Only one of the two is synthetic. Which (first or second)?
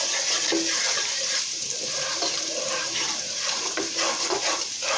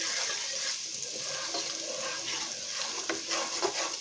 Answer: first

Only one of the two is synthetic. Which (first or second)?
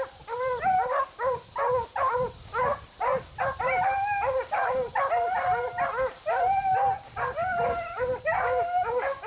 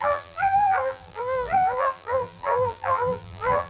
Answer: second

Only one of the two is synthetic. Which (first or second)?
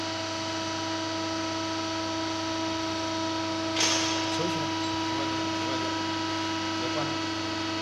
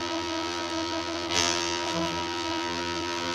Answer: second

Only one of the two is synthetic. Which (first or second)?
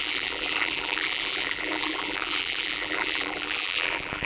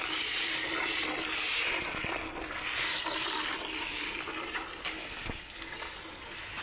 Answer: first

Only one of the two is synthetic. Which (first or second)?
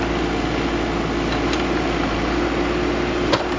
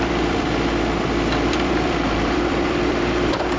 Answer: second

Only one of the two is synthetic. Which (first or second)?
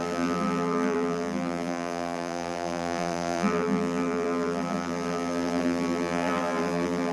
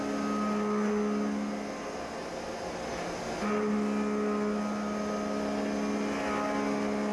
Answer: first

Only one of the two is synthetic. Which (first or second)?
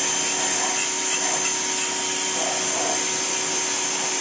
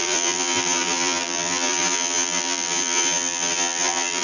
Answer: second